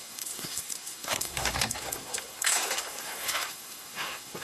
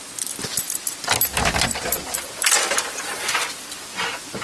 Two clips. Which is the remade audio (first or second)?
first